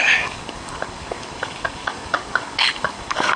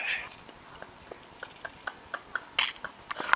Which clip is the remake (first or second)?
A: first